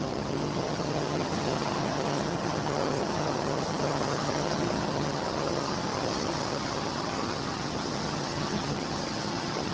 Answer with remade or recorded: remade